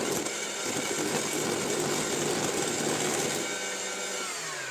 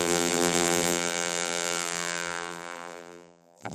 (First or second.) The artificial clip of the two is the second